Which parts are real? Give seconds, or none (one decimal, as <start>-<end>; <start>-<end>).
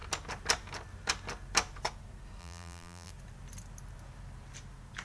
0.0-2.4; 3.1-5.0